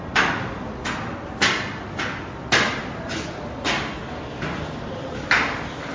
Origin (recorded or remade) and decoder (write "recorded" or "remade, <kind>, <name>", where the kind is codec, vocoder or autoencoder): recorded